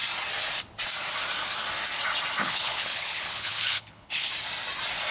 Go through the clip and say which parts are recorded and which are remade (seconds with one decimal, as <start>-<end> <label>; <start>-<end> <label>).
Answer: 0.0-2.4 recorded; 2.4-4.3 remade; 4.3-5.1 recorded

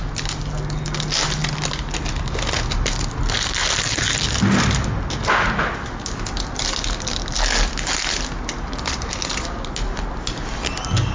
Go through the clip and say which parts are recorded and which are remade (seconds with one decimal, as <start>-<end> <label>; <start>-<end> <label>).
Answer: 0.0-11.1 recorded

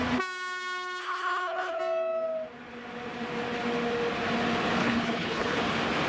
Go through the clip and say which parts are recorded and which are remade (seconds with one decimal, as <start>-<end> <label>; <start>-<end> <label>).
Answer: 0.0-1.0 recorded; 1.0-1.8 remade; 1.8-4.8 recorded; 4.8-5.6 remade; 5.6-6.1 recorded

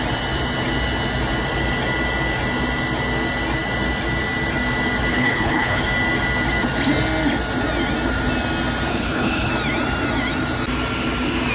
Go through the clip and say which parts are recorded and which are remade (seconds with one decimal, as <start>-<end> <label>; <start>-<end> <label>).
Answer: 0.0-5.1 recorded; 5.1-5.8 remade; 5.8-8.9 recorded; 8.9-9.5 remade; 9.5-11.5 recorded

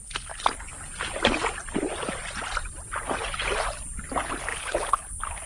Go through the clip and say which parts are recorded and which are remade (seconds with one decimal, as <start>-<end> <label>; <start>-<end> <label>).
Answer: 0.0-4.5 recorded; 4.5-5.1 remade; 5.1-5.5 recorded